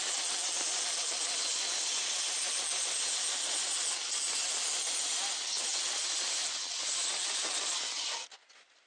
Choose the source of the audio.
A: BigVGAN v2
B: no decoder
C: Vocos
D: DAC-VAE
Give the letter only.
B